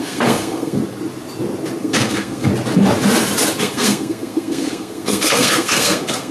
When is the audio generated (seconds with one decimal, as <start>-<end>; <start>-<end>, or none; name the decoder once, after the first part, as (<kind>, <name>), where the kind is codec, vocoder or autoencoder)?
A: 0.0-0.8 (codec, SNAC); 1.8-2.5; 3.6-6.3